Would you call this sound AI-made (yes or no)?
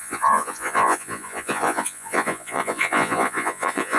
yes